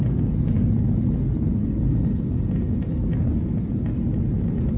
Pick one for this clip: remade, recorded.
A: recorded